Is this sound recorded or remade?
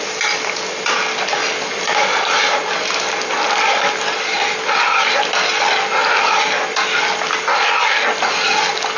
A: recorded